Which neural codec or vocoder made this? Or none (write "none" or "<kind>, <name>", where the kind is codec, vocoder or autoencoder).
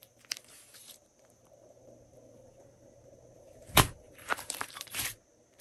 vocoder, BigVGAN v2